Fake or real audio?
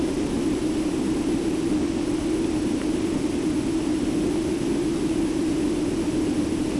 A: real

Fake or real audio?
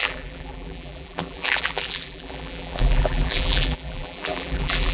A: fake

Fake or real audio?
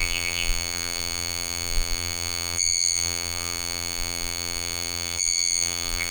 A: fake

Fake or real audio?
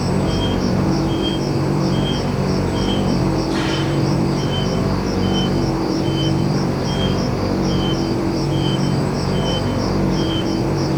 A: fake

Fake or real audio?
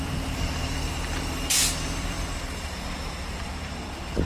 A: fake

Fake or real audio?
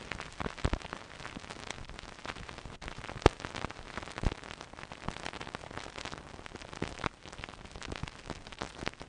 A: fake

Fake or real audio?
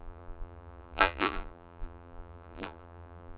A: fake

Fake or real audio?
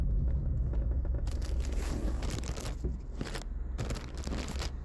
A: real